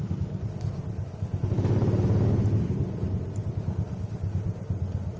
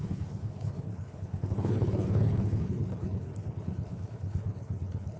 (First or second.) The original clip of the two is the first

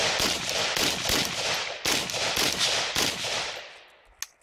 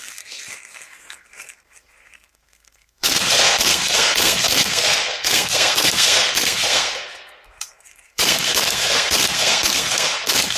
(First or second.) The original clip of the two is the first